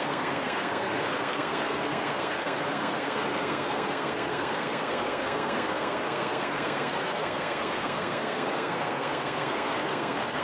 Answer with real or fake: fake